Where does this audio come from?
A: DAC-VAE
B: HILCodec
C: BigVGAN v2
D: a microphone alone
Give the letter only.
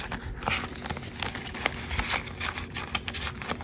D